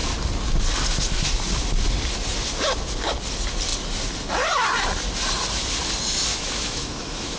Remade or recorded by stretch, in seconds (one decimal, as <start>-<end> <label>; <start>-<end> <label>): 0.0-6.3 recorded; 6.3-7.4 remade